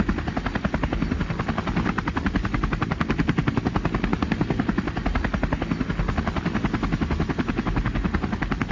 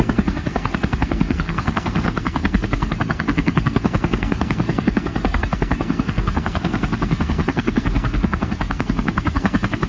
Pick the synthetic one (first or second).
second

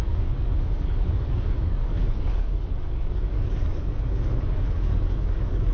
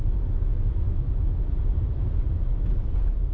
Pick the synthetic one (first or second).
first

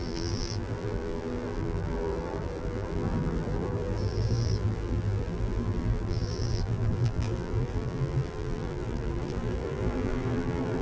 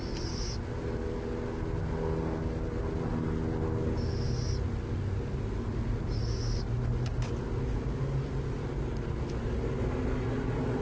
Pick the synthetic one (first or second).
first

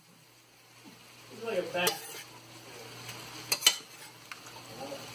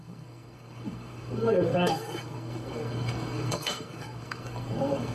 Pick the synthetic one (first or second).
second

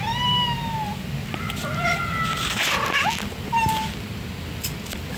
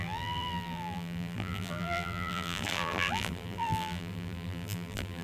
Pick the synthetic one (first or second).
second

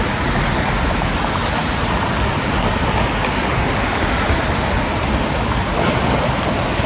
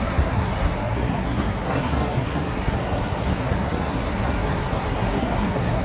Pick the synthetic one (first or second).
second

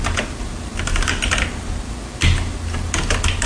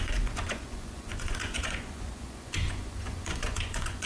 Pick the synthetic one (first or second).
second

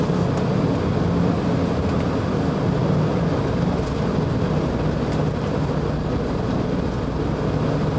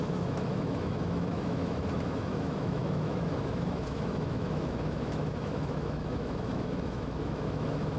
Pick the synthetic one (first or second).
second